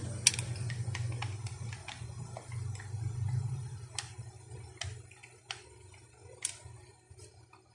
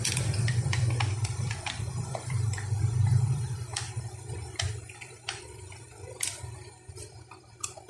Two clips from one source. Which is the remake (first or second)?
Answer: second